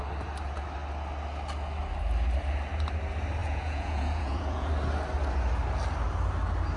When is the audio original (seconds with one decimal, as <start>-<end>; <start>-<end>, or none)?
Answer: 0.0-3.4; 4.7-6.8